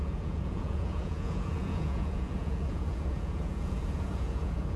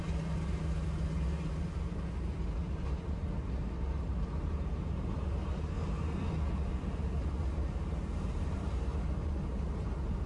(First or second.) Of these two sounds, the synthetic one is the first